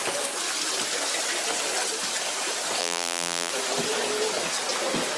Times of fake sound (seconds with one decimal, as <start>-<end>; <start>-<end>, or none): 2.8-3.5